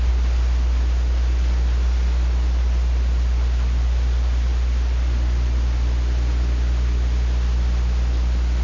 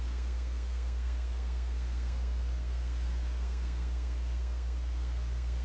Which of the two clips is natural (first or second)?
first